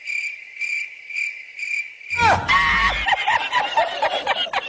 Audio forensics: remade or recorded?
recorded